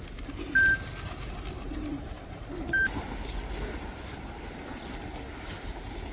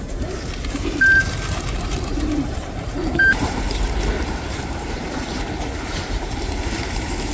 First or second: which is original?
first